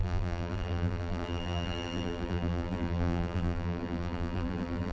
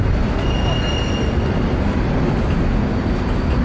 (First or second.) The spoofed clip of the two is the first